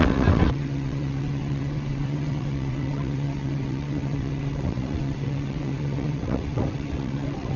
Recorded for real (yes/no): no